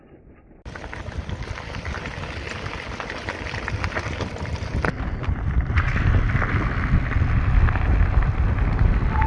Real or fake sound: real